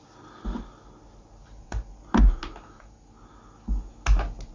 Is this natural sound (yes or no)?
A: yes